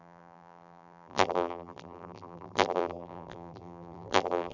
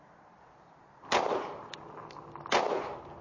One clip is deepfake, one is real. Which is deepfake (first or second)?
first